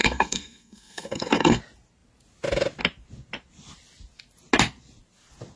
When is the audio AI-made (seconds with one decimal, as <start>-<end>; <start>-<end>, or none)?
0.0-1.6